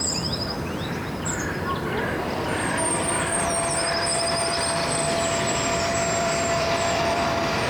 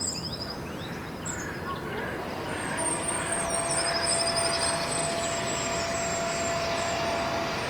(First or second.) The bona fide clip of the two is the second